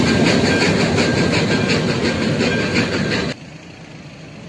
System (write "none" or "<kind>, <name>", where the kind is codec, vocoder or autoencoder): none